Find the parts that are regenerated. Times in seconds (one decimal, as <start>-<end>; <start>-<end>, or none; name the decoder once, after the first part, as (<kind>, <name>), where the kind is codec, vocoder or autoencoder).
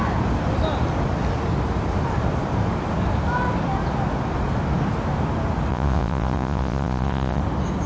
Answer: 5.7-7.4 (vocoder, Vocos)